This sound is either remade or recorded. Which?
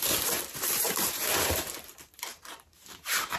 remade